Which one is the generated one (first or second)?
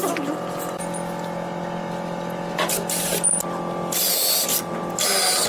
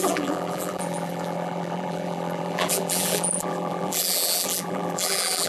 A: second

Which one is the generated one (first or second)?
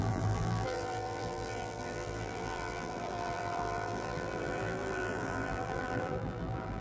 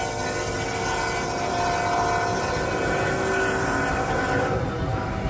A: first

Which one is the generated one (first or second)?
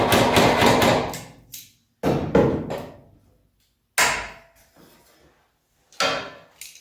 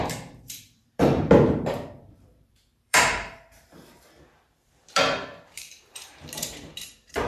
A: second